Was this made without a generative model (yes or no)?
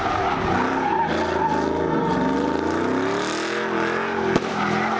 yes